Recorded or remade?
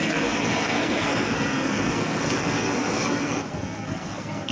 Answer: remade